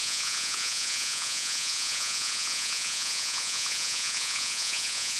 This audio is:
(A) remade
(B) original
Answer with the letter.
A